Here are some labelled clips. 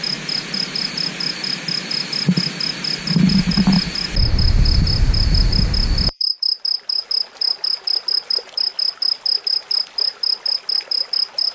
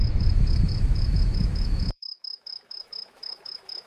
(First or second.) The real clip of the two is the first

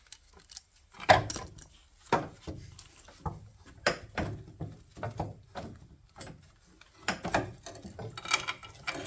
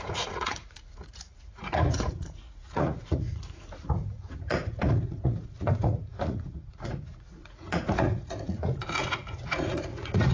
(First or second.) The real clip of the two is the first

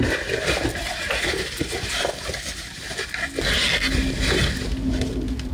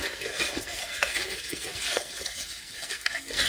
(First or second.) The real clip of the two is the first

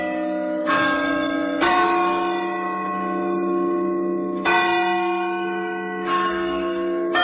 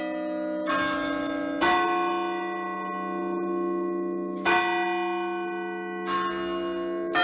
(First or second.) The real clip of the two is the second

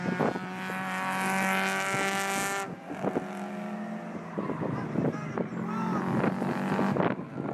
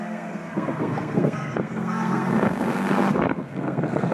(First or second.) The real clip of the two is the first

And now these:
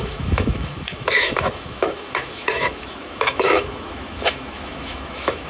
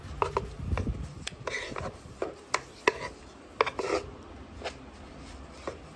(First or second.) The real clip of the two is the second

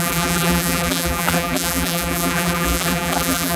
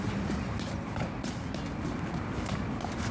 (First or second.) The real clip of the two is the second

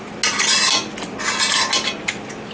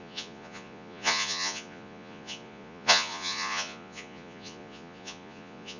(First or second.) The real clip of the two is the first